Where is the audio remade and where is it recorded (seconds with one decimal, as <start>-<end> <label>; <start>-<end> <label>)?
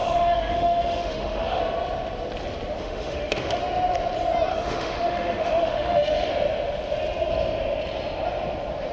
0.0-1.6 remade; 1.6-2.8 recorded; 2.8-3.6 remade; 3.6-4.5 recorded; 4.5-6.3 remade; 6.3-8.9 recorded